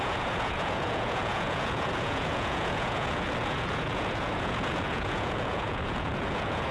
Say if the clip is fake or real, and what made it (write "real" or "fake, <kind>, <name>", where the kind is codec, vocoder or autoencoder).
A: fake, vocoder, Vocos